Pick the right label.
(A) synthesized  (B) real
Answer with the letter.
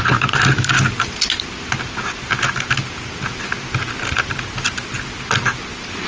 B